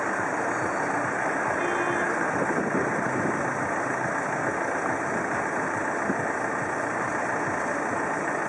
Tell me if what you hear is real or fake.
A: real